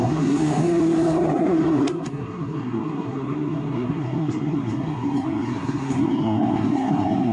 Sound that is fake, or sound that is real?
fake